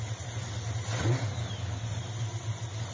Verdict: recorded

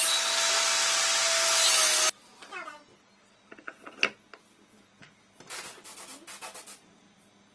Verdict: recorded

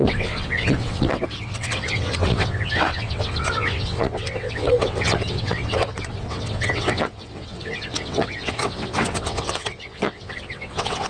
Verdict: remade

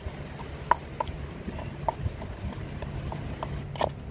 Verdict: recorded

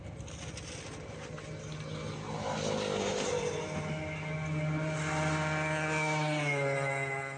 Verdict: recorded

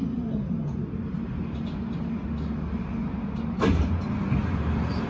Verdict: recorded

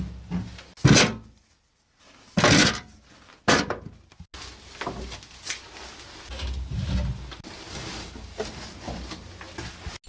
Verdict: recorded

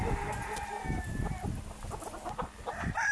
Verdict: recorded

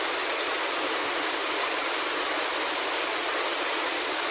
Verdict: recorded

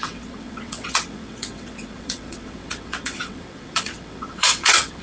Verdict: remade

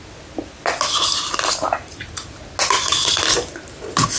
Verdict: recorded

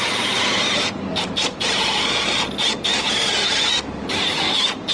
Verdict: recorded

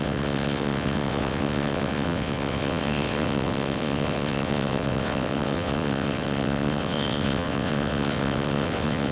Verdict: remade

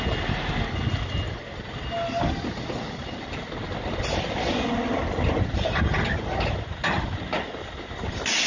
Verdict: recorded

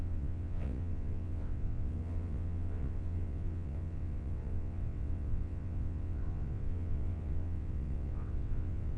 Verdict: remade